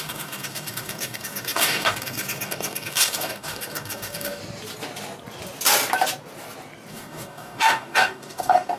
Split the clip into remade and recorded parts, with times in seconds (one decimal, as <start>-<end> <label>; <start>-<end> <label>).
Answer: 0.0-4.4 remade; 4.4-6.9 recorded; 6.9-8.8 remade